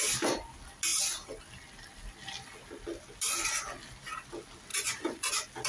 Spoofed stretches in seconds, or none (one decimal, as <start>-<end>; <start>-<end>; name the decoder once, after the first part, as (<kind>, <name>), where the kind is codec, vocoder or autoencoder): 4.7-5.3 (vocoder, Vocos)